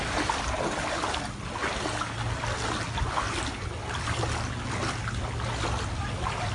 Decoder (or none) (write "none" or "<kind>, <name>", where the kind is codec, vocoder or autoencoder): none